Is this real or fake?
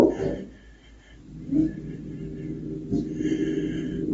real